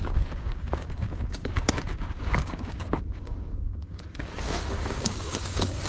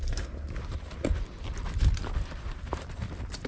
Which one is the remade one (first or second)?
first